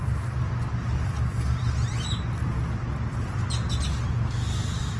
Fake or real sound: real